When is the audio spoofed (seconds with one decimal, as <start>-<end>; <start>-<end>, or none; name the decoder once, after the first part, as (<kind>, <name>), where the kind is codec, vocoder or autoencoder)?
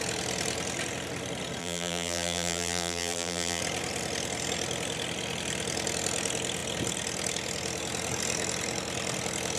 1.6-3.6 (vocoder, BigVGAN v2)